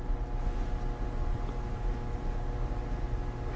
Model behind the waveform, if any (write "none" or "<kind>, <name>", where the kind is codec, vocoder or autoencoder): none